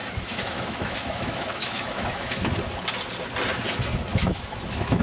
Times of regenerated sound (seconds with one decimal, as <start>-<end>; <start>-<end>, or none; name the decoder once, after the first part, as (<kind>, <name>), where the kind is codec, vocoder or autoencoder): 0.0-2.5 (autoencoder, DAC-VAE); 4.1-5.0